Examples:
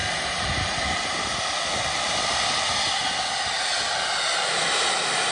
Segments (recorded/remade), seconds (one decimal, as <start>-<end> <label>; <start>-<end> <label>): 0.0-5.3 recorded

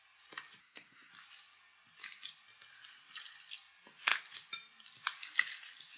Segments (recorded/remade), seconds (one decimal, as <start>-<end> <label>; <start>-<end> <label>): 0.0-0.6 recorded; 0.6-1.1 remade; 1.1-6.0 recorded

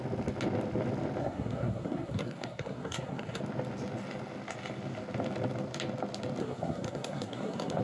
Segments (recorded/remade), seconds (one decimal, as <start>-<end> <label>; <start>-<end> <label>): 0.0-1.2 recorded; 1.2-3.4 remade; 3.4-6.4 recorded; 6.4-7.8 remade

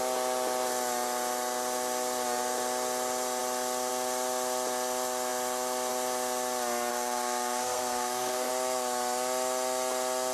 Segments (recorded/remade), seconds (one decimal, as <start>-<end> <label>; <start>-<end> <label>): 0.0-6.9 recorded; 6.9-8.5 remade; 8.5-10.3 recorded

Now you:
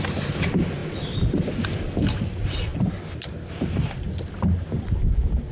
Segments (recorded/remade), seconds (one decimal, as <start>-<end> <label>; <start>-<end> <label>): 0.0-5.5 recorded

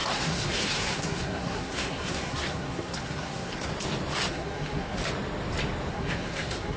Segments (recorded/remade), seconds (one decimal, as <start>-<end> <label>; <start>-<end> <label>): 0.0-3.7 remade; 3.7-4.3 recorded; 4.3-5.0 remade; 5.0-5.9 recorded; 5.9-6.8 remade

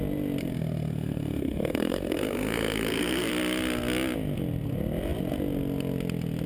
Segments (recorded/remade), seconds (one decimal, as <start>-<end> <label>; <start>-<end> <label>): 0.0-0.4 recorded; 0.4-3.3 remade; 3.3-6.5 recorded